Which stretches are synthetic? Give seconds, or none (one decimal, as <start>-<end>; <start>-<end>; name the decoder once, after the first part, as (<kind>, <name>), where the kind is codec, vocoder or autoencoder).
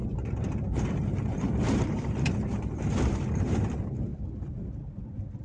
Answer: 0.0-4.1 (vocoder, BigVGAN v2)